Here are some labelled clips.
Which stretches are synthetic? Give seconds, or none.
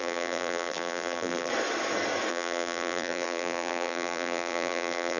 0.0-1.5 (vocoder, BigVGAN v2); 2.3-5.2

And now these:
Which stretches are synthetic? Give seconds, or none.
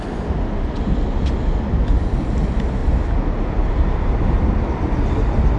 2.8-3.8 (vocoder, BigVGAN v2)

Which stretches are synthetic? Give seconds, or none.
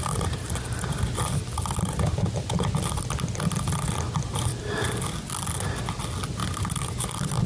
4.5-5.0 (vocoder, BigVGAN v2); 6.4-7.5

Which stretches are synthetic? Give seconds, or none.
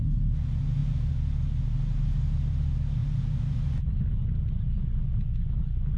none